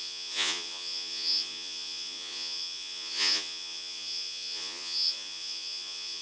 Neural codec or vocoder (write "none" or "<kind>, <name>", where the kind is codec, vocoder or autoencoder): vocoder, Vocos